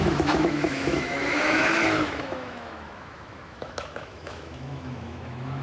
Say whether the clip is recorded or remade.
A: remade